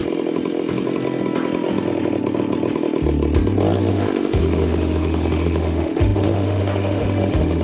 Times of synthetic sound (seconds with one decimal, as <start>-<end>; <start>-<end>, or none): 3.9-7.6